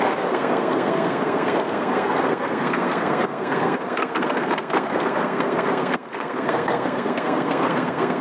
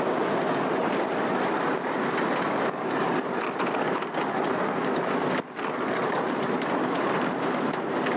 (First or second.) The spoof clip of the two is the first